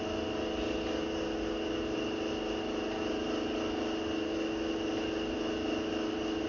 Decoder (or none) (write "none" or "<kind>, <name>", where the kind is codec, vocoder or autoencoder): none